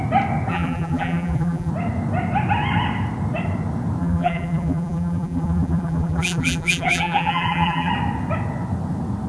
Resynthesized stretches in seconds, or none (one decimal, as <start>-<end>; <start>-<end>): 0.5-1.7; 4.0-7.9